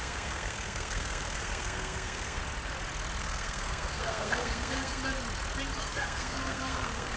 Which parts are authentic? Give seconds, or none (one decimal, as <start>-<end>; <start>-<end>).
2.4-3.2; 5.0-5.8